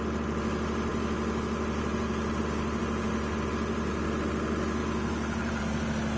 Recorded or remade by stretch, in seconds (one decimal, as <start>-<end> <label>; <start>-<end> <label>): 0.0-6.2 recorded